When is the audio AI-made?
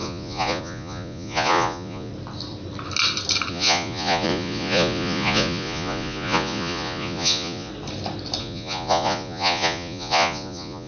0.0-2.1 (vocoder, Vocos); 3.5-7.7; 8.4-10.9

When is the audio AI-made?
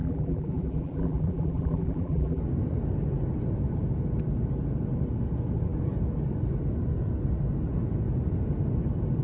0.0-2.4 (vocoder, BigVGAN v2)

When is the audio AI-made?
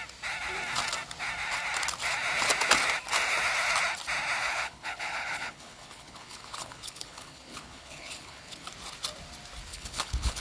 4.4-8.7 (codec, HILCodec); 9.7-10.4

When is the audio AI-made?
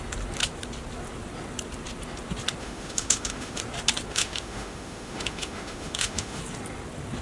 2.6-3.6 (autoencoder, DAC-VAE); 4.1-6.4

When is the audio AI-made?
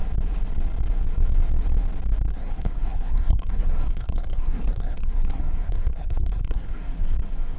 2.3-6.8 (codec, SNAC)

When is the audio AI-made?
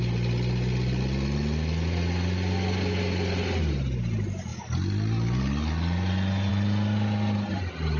none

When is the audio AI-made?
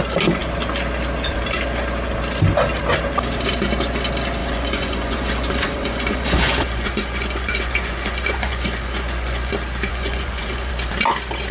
4.4-9.5 (vocoder, Vocos); 9.9-10.7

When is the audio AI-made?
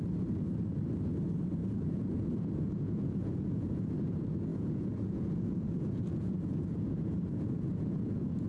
1.6-3.9 (vocoder, Vocos); 4.5-8.5